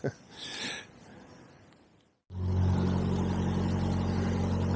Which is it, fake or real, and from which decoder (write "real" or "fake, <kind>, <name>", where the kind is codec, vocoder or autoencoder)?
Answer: real